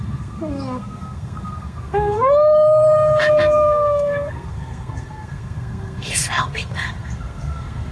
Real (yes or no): no